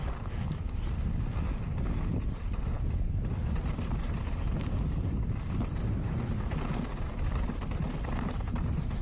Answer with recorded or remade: recorded